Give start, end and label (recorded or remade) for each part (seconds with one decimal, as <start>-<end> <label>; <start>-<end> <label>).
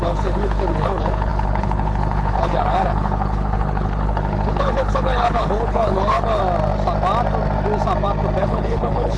0.0-6.4 remade; 6.4-8.4 recorded; 8.4-9.2 remade